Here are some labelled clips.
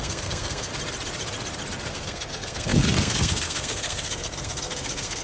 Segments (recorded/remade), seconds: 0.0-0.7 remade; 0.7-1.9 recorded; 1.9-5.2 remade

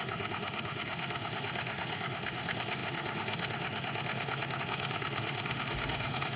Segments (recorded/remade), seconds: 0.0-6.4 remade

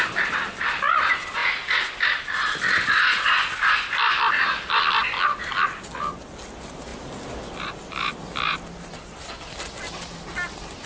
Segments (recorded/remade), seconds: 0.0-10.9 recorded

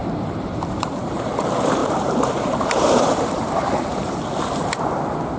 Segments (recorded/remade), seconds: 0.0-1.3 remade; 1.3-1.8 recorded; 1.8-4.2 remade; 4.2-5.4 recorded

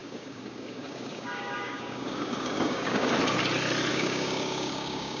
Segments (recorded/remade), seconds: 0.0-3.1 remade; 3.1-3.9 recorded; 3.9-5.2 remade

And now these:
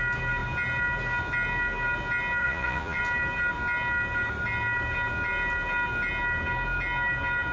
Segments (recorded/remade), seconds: 0.0-2.4 recorded; 2.4-3.0 remade; 3.0-7.5 recorded

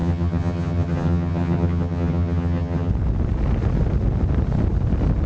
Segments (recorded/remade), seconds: 0.0-2.9 remade; 2.9-5.3 recorded